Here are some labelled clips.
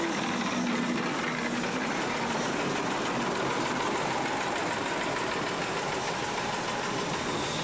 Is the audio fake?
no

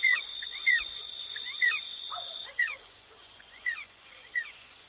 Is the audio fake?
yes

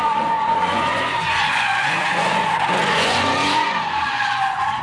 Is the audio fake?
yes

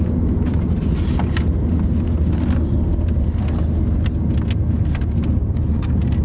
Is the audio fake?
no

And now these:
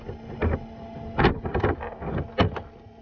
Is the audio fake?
no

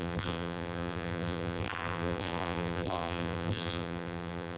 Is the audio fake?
yes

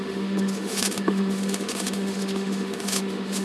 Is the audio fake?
yes